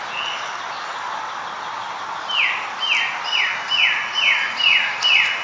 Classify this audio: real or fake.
real